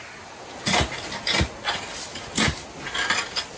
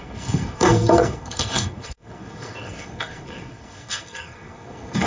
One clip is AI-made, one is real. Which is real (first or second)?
first